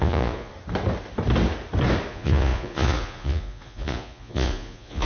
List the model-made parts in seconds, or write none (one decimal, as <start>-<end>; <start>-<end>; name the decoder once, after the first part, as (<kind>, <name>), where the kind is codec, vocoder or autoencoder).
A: 0.0-0.5 (vocoder, Vocos); 2.1-5.0

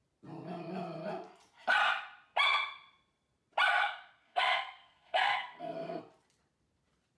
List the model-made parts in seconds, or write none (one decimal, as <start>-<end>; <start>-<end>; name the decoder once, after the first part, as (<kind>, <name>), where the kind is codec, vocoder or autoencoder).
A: 3.7-6.0 (codec, SNAC)

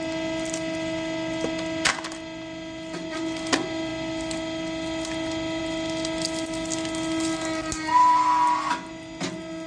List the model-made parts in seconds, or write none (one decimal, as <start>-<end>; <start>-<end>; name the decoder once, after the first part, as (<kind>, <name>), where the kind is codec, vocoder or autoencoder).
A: none